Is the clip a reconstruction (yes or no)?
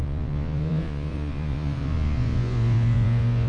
yes